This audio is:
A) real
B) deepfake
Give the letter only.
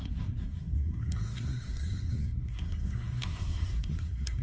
B